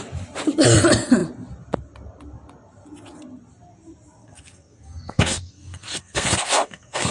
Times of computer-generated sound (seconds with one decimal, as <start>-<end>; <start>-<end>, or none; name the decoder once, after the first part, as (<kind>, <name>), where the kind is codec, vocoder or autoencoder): 4.2-7.1 (codec, SNAC)